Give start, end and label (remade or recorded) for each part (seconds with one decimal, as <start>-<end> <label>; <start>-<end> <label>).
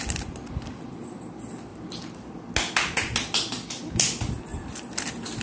0.0-1.7 recorded; 1.7-2.5 remade; 2.5-4.5 recorded; 4.5-5.4 remade